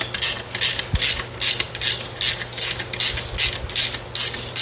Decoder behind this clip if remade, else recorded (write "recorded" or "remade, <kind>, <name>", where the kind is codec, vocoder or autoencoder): recorded